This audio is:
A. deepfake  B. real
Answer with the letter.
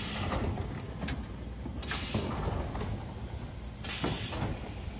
B